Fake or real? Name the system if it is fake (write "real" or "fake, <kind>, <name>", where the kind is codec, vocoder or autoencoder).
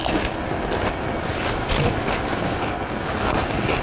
real